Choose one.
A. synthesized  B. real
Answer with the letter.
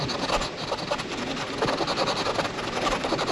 B